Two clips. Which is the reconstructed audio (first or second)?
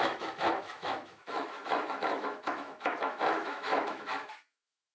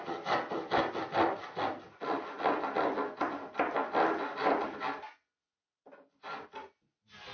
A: first